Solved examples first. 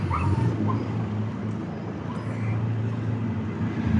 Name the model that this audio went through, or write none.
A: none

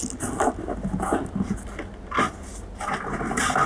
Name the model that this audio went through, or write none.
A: none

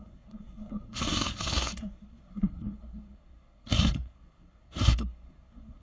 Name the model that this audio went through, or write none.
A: codec, SNAC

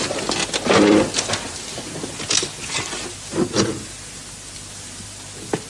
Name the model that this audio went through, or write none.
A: none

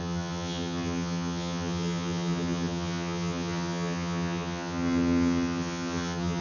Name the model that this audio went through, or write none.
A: vocoder, HiFi-GAN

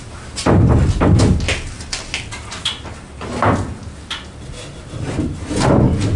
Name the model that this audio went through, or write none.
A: none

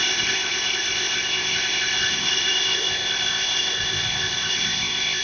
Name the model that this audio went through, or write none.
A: codec, ZipCodec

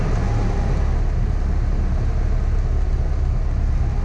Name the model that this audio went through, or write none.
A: none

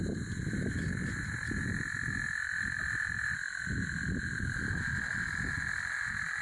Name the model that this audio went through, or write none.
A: none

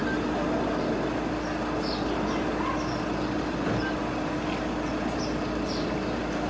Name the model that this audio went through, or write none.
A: none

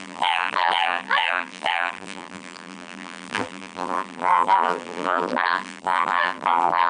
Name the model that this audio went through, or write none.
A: vocoder, BigVGAN v2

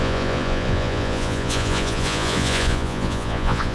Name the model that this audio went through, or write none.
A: vocoder, Vocos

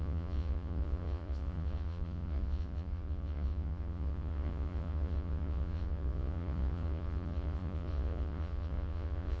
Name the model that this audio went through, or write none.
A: vocoder, Vocos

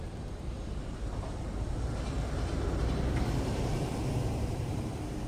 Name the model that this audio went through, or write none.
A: vocoder, BigVGAN v2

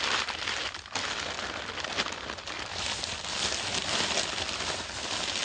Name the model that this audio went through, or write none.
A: none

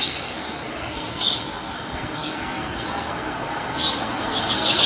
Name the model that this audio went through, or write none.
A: codec, SNAC